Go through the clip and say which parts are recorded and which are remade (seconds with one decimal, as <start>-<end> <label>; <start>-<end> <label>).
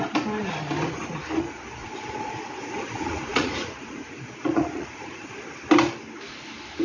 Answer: 0.0-1.8 recorded; 1.8-5.4 remade; 5.4-6.8 recorded